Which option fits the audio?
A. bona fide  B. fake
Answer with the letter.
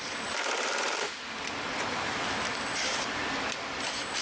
B